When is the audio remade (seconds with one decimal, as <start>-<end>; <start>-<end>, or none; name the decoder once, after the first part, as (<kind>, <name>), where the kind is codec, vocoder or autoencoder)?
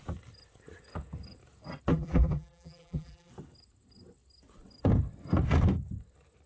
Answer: 1.9-3.3 (vocoder, BigVGAN v2)